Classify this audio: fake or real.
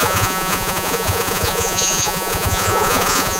fake